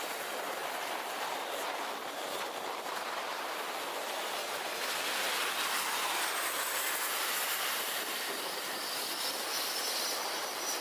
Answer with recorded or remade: remade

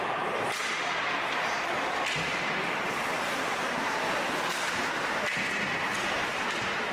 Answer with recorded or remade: recorded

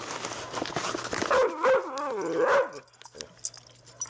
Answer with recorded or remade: recorded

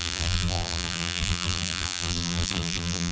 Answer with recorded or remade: remade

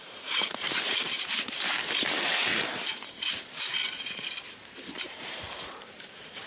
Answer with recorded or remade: remade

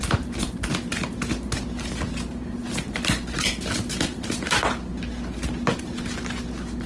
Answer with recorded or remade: recorded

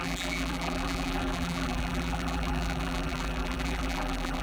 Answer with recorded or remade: remade